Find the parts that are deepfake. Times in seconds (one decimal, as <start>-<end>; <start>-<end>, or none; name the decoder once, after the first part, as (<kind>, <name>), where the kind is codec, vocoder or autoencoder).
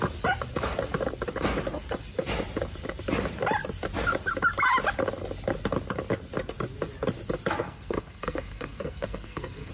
7.6-9.7 (codec, SNAC)